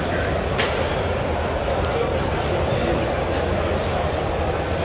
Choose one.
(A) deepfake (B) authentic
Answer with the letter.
B